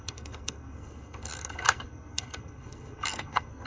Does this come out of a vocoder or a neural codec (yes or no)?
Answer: yes